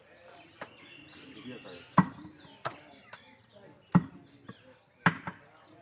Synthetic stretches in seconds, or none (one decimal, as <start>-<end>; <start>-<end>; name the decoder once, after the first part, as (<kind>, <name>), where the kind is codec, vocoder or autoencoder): none